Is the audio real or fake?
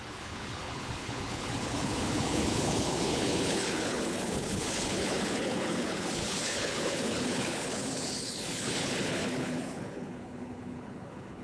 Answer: fake